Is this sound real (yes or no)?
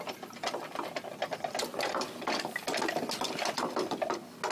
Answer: yes